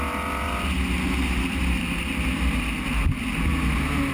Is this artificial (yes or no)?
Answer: no